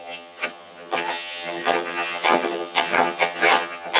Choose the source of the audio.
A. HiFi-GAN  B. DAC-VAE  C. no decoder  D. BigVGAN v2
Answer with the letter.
A